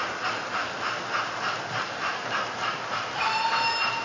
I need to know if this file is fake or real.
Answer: real